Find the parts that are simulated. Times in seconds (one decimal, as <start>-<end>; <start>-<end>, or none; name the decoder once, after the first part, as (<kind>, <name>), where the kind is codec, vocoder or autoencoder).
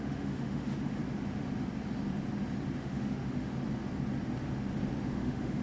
0.0-1.0 (autoencoder, DAC-VAE); 2.8-3.5; 5.0-5.6